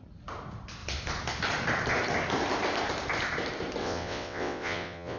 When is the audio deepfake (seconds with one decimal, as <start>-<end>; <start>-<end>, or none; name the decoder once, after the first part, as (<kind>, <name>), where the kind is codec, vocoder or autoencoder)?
3.8-5.2 (vocoder, WaveNeXt)